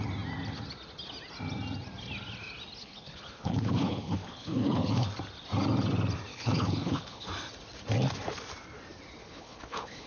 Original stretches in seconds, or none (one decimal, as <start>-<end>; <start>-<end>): 0.0-2.8; 5.1-6.3; 7.3-9.2